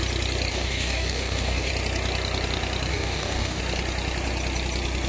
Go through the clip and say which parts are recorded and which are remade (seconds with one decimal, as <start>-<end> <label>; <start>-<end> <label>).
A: 0.0-0.5 recorded; 0.5-1.7 remade; 1.7-2.9 recorded; 2.9-3.6 remade; 3.6-5.1 recorded